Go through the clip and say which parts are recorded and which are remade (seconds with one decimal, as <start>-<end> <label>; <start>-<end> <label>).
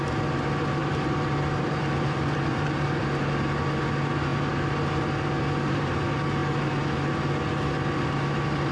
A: 0.0-0.8 recorded; 0.8-3.0 remade; 3.0-8.7 recorded